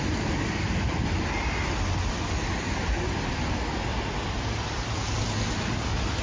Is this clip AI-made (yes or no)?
no